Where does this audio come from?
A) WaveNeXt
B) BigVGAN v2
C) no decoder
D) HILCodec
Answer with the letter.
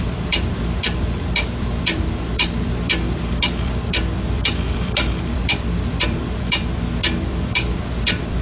B